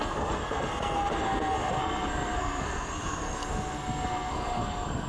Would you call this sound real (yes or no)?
no